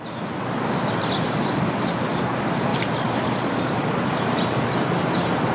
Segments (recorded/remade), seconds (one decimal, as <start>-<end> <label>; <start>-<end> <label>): 0.0-2.7 recorded; 2.7-5.1 remade; 5.1-5.5 recorded